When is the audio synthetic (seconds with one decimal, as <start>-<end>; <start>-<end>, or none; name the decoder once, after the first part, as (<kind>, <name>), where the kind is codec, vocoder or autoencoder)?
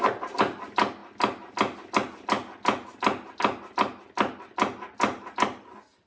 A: none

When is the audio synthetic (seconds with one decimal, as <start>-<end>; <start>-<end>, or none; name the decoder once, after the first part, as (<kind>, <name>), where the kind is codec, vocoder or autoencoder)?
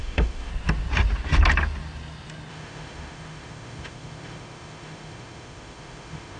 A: 0.0-0.5 (autoencoder, DAC-VAE); 2.5-6.4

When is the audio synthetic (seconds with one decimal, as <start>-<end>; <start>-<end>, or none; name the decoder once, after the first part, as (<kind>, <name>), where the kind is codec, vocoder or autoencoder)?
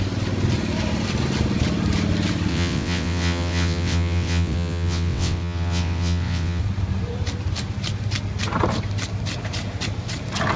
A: 2.5-6.6 (vocoder, WaveNeXt)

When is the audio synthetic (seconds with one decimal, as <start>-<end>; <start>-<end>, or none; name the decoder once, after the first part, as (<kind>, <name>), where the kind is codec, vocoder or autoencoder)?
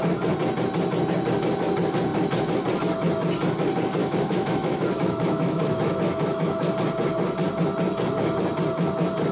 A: 4.0-6.7 (autoencoder, DAC-VAE)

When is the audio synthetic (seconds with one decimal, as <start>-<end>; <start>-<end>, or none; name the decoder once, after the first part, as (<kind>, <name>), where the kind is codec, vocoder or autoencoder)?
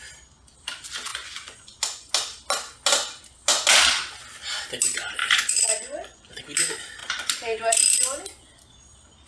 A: 1.1-2.1 (vocoder, Vocos); 5.2-6.4; 7.0-7.8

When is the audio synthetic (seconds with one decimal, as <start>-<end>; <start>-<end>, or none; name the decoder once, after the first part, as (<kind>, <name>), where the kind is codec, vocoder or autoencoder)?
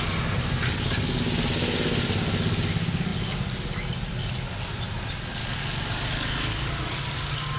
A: 0.6-1.2 (codec, DAC); 5.4-6.7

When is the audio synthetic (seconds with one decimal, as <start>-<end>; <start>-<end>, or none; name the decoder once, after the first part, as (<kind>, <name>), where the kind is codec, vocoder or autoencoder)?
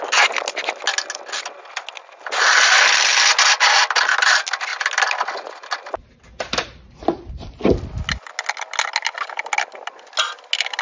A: none